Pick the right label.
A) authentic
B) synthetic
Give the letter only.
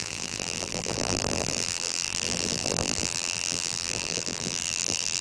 B